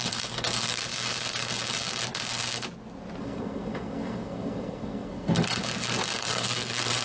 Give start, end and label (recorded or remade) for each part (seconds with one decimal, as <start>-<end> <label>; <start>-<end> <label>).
0.0-0.8 remade; 0.8-3.2 recorded; 3.2-5.6 remade; 5.6-6.2 recorded; 6.2-7.0 remade